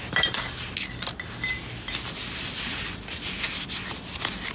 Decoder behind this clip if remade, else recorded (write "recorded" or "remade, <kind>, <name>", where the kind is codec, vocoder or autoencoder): recorded